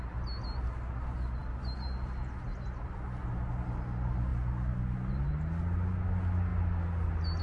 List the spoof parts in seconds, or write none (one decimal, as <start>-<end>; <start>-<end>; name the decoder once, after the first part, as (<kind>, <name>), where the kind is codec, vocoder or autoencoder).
none

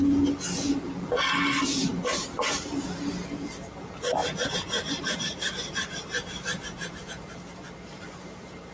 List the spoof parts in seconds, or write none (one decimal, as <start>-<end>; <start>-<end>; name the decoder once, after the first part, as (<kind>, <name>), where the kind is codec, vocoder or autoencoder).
1.9-3.0 (vocoder, BigVGAN v2); 4.2-8.7

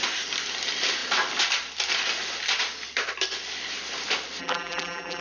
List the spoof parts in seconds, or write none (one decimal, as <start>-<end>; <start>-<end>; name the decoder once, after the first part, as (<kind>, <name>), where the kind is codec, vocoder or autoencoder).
4.4-5.2 (vocoder, BigVGAN v2)